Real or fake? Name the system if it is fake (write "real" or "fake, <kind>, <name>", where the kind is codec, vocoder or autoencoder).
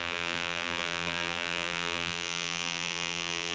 fake, vocoder, BigVGAN v2